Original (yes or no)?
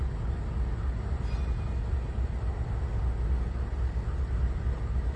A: yes